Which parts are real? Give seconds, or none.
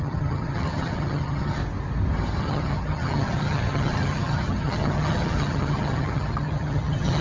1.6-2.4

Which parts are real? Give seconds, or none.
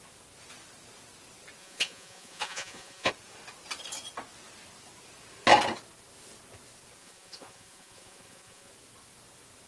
0.0-1.6; 3.1-7.0; 8.7-9.7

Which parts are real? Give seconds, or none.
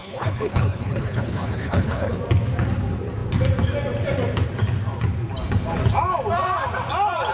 2.2-7.3